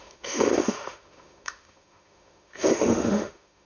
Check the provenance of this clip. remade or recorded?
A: remade